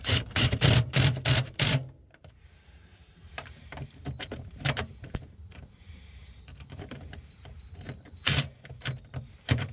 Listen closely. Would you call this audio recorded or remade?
remade